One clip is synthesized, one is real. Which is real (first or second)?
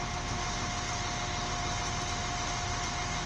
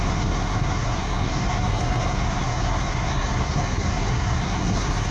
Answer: first